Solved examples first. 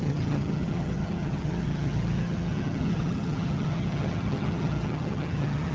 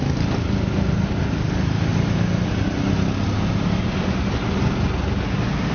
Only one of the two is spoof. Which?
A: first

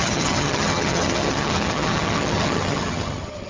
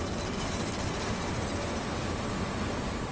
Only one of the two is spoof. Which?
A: first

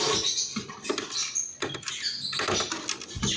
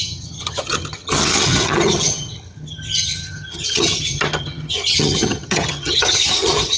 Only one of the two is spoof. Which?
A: second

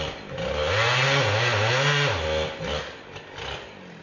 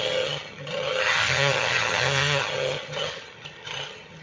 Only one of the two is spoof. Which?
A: second